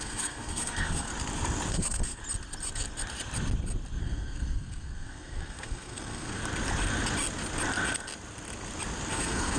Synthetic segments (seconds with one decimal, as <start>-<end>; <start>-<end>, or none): 0.0-1.1; 1.7-2.2; 4.0-6.4; 9.1-9.6